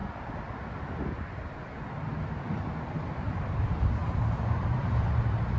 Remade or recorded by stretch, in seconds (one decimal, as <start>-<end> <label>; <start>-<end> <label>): 0.0-3.4 recorded; 3.4-4.0 remade; 4.0-4.6 recorded; 4.6-5.6 remade